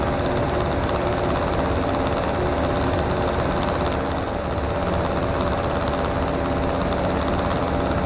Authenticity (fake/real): real